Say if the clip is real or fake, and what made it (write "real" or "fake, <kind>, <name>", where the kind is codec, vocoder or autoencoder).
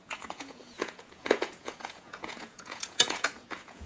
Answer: fake, vocoder, Vocos